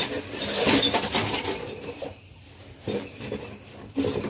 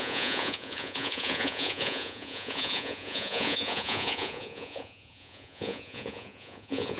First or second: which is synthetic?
second